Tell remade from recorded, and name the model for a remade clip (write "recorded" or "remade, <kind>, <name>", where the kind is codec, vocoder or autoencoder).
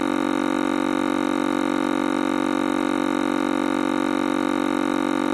recorded